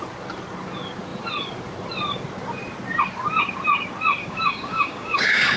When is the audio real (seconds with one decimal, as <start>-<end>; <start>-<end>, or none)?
0.0-4.2